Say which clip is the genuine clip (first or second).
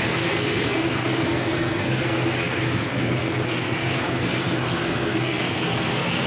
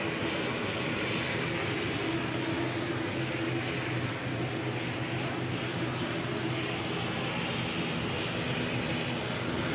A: second